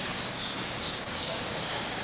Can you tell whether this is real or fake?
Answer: fake